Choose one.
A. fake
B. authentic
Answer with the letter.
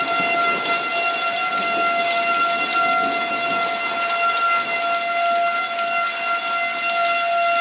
B